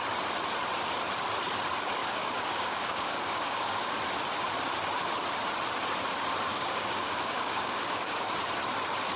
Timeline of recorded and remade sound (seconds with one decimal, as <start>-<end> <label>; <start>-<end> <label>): 0.0-2.0 recorded; 2.0-3.9 remade; 3.9-6.5 recorded; 6.5-8.3 remade; 8.3-9.2 recorded